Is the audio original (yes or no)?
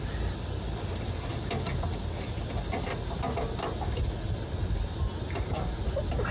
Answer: yes